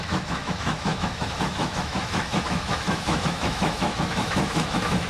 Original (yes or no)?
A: no